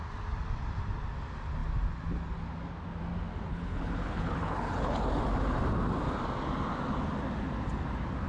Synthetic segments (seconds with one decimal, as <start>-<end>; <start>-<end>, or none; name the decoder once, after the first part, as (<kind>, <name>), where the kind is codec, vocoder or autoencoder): 3.5-5.1 (codec, HILCodec)